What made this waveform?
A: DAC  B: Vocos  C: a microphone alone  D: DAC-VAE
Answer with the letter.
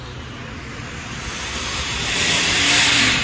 C